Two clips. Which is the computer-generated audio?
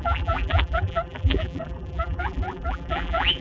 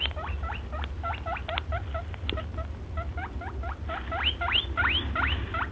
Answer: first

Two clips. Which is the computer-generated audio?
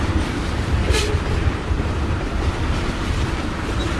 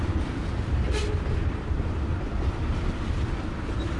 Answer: first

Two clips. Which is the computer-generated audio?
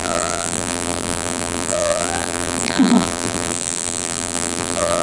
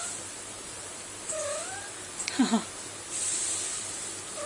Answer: first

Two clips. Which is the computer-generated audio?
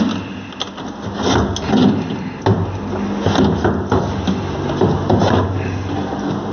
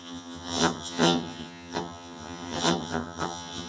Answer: second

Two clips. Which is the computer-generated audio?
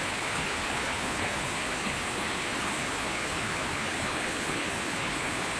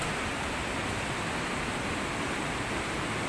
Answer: first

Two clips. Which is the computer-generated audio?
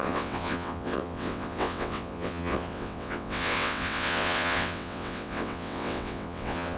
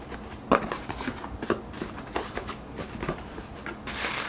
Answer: first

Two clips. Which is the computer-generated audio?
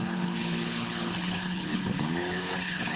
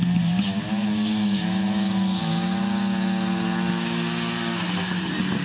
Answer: first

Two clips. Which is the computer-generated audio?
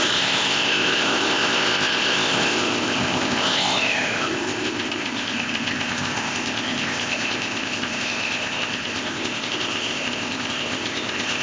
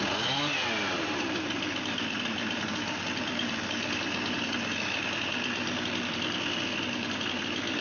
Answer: first